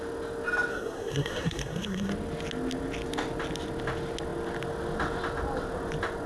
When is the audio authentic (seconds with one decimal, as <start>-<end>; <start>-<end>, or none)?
0.0-0.7; 2.1-6.3